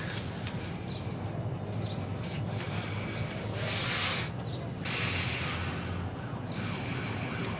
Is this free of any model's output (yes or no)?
yes